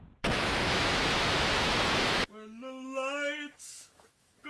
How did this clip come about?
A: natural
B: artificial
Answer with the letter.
B